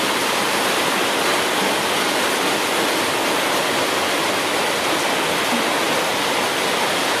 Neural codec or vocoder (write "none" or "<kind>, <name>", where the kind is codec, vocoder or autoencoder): none